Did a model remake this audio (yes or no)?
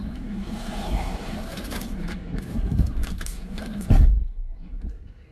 yes